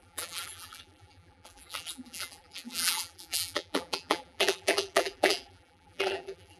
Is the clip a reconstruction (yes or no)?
yes